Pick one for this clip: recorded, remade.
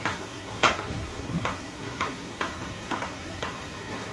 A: remade